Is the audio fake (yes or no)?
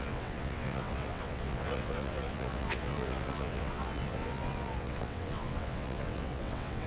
yes